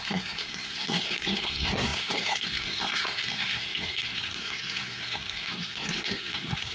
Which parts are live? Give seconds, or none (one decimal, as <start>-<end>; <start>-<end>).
none